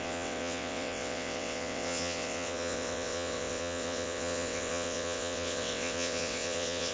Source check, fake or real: fake